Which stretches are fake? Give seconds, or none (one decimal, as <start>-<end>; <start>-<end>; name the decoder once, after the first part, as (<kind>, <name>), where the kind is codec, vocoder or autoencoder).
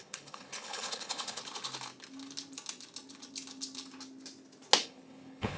0.0-1.4 (codec, HILCodec); 4.8-5.6